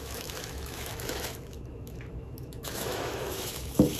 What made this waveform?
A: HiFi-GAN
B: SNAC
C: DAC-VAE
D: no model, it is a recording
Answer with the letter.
C